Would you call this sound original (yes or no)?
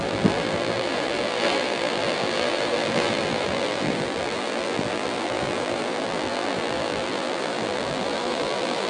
no